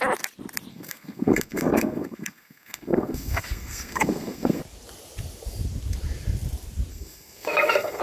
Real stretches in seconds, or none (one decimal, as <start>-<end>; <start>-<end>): 0.0-0.7; 4.6-6.9